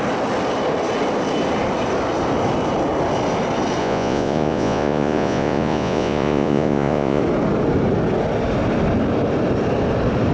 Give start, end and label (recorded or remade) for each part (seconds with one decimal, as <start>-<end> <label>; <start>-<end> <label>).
0.0-3.8 recorded; 3.8-7.2 remade; 7.2-10.3 recorded